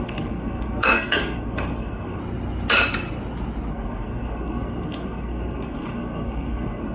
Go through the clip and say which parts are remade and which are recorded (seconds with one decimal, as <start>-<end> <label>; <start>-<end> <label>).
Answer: 0.0-2.2 remade; 2.2-3.7 recorded; 3.7-6.9 remade